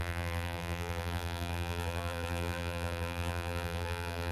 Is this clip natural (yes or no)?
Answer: no